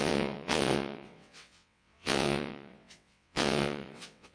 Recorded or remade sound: remade